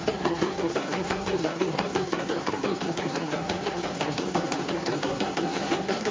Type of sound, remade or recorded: remade